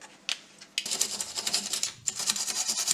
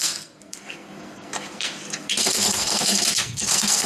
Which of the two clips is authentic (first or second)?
first